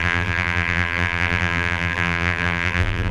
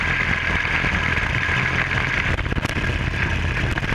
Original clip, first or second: second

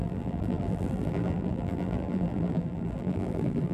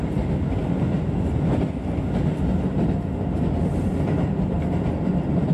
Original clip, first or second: second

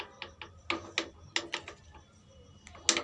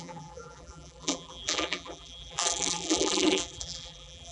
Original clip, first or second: first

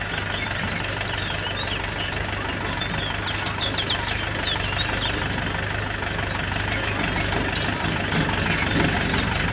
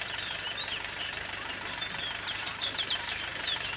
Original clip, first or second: first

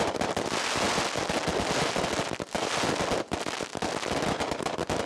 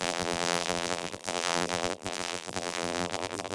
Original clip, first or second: first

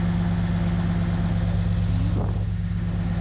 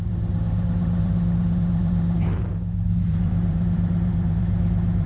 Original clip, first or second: first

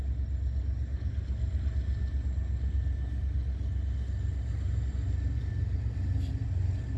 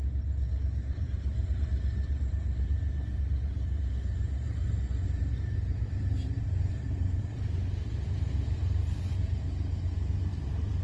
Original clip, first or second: first